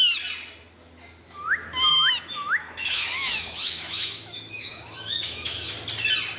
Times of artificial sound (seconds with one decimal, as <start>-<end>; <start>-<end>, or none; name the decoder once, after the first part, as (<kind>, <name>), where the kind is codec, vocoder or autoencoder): 1.9-5.7 (autoencoder, DAC-VAE)